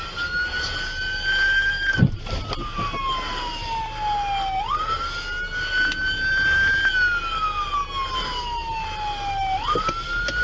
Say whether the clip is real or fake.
real